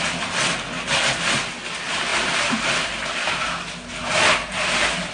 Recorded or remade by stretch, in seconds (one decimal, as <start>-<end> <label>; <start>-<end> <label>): 0.0-5.1 recorded